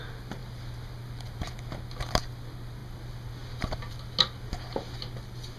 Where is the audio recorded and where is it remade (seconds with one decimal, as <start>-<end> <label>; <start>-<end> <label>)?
0.0-5.6 recorded

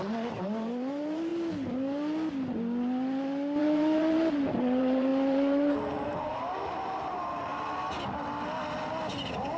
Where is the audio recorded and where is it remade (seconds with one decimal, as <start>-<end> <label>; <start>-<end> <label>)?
0.0-1.3 remade; 1.3-3.6 recorded; 3.6-7.5 remade; 7.5-9.6 recorded

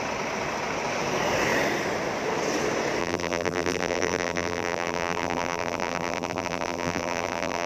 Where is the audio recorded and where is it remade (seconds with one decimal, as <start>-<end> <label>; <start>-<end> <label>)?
0.0-3.0 recorded; 3.0-7.7 remade

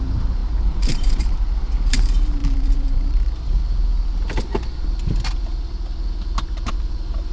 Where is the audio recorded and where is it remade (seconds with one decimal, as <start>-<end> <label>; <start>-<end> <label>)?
0.0-3.6 remade; 3.6-6.7 recorded; 6.7-7.3 remade

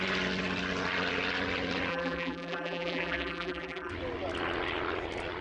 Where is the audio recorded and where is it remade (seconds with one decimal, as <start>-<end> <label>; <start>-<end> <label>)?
0.0-1.9 recorded; 1.9-3.9 remade; 3.9-5.4 recorded